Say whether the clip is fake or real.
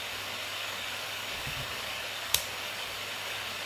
fake